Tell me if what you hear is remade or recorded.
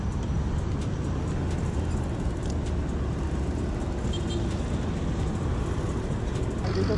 recorded